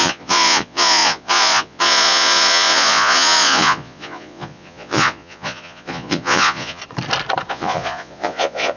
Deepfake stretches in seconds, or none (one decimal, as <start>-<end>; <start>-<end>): 0.0-6.8; 7.5-8.8